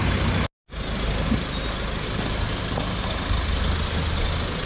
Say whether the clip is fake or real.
real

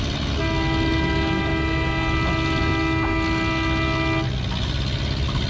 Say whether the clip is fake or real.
real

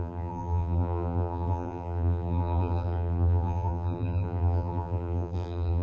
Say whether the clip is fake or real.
fake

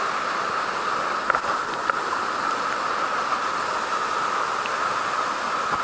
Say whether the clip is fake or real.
real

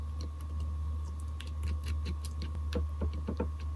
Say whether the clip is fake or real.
real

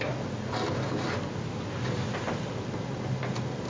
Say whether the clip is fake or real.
real